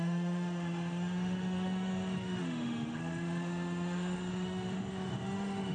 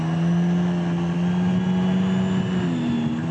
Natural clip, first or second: second